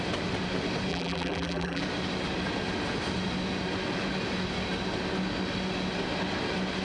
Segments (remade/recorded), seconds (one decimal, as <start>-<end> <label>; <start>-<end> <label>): 0.0-0.9 recorded; 0.9-1.8 remade; 1.8-6.8 recorded